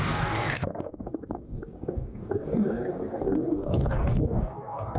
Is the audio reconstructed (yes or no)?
yes